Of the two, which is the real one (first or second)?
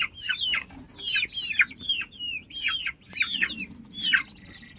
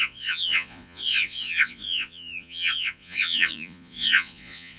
first